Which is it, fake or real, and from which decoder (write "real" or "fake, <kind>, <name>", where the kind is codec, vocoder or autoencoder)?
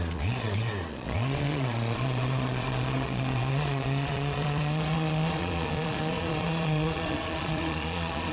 fake, vocoder, Vocos